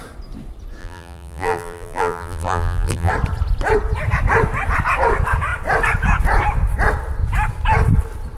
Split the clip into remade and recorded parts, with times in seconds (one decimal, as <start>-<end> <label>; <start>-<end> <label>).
0.0-0.8 recorded; 0.8-3.1 remade; 3.1-8.4 recorded